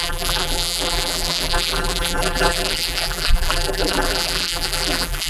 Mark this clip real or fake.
fake